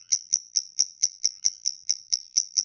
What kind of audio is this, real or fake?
fake